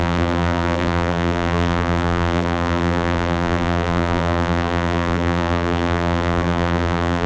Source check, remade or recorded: remade